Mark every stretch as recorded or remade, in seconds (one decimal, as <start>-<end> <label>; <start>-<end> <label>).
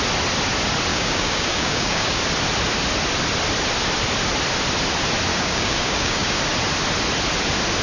0.0-0.9 recorded; 0.9-2.2 remade; 2.2-5.3 recorded; 5.3-6.4 remade; 6.4-7.8 recorded